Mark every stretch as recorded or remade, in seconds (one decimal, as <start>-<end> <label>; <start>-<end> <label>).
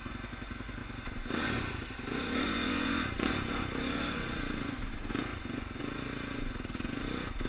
0.0-7.5 remade